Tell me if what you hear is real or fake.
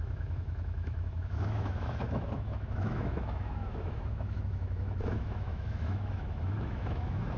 fake